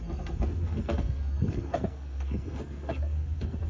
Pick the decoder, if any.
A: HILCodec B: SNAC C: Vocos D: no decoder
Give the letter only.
B